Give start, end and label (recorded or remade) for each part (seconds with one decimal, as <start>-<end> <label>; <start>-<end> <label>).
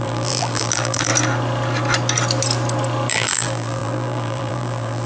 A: 0.0-1.1 remade; 1.1-3.1 recorded; 3.1-5.1 remade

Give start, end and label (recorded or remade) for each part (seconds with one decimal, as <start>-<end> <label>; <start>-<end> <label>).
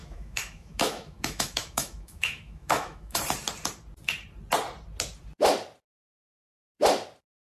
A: 0.0-3.2 remade; 3.2-7.5 recorded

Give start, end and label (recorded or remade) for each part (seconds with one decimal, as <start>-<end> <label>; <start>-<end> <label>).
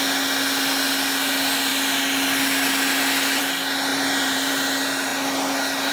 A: 0.0-3.9 recorded; 3.9-4.5 remade; 4.5-5.9 recorded